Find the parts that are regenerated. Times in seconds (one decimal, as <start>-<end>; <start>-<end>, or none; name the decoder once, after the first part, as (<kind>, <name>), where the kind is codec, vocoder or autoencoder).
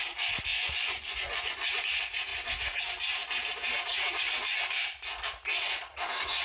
0.5-1.8 (vocoder, Vocos); 2.3-2.8